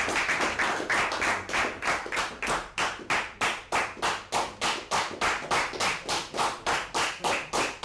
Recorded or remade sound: remade